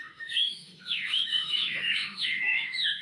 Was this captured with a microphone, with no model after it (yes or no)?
no